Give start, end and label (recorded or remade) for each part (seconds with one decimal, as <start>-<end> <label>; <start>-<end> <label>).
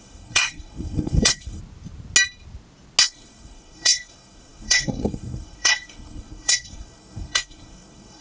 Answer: 0.0-1.6 remade; 1.6-3.0 recorded; 3.0-8.2 remade